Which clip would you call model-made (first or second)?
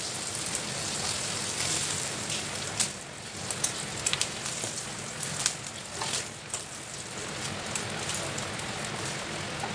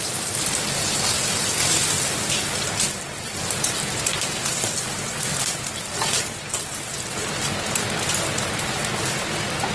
second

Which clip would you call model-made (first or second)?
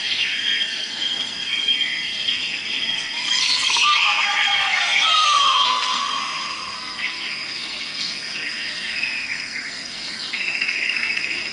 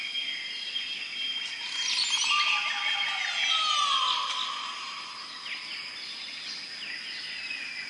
first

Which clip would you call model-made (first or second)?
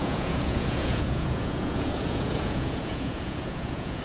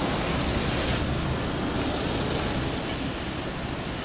first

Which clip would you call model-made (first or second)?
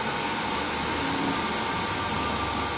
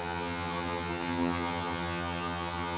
second